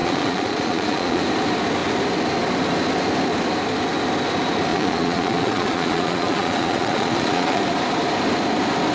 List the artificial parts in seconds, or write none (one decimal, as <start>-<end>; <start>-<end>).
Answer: 0.0-1.2; 4.7-7.6